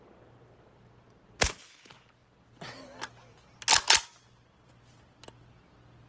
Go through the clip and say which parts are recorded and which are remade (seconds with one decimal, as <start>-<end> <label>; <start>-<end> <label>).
0.0-6.1 recorded